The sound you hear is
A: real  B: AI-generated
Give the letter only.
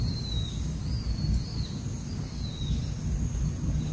A